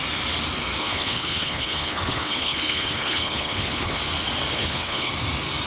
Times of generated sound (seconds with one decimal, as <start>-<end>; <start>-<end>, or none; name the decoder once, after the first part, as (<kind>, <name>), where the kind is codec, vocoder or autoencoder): 0.8-4.0 (codec, HILCodec); 4.5-5.1